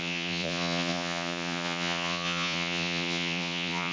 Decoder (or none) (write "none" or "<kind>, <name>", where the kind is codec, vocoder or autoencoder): vocoder, Vocos